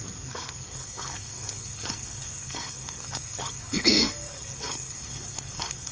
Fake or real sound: fake